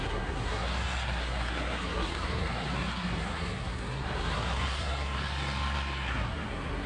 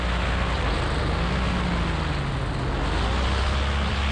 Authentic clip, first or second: second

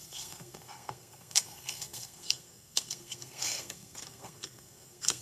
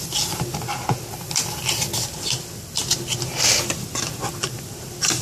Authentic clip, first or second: second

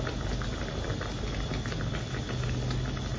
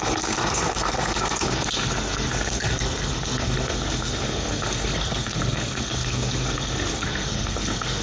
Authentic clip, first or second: first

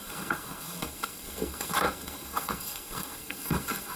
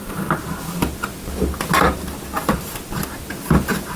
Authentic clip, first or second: second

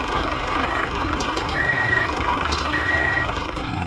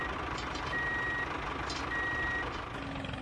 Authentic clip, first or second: second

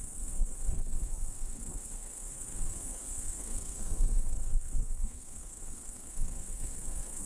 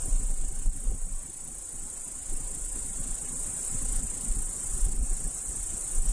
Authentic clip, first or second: second